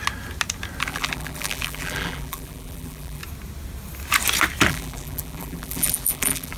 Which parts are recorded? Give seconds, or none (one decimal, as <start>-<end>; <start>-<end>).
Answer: 0.0-0.8; 3.2-4.7